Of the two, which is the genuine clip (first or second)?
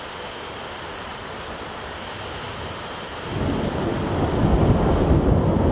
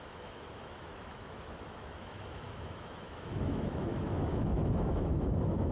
first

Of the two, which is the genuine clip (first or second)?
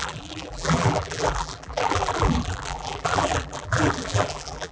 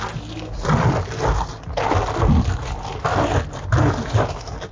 second